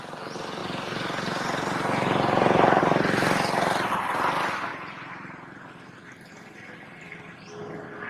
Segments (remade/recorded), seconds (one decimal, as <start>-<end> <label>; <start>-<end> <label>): 0.0-8.1 recorded